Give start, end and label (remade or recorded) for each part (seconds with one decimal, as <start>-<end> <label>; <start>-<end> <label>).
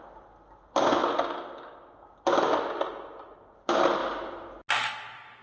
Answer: 0.0-5.4 recorded